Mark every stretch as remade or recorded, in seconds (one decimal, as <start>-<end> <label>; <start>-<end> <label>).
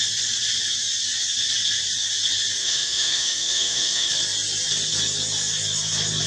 0.0-2.6 recorded; 2.6-4.1 remade; 4.1-6.3 recorded